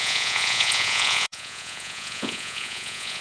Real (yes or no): no